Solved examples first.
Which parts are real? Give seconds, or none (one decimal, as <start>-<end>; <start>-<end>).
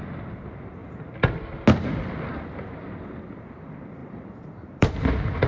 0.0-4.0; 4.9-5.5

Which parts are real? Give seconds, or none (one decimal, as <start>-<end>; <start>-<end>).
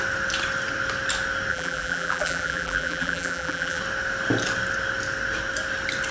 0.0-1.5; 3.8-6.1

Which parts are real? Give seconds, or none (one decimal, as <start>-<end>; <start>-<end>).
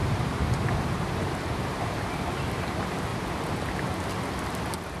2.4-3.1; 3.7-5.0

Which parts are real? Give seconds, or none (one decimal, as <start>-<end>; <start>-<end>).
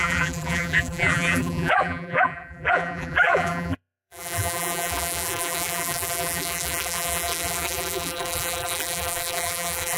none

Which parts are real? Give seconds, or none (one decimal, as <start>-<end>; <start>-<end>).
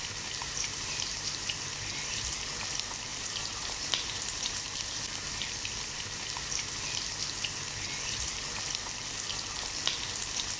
0.0-0.4; 2.1-3.1; 5.0-10.6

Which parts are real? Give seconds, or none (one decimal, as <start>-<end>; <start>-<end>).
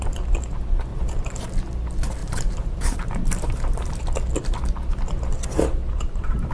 0.0-0.9; 1.4-2.2; 4.0-5.8